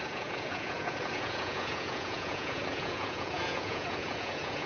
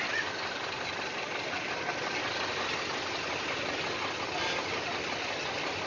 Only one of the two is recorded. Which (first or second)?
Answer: second